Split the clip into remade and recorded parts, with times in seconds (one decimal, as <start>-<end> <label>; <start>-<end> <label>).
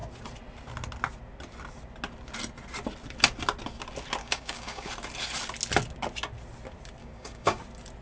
0.0-4.2 recorded; 4.2-4.9 remade; 4.9-7.0 recorded; 7.0-7.6 remade; 7.6-8.0 recorded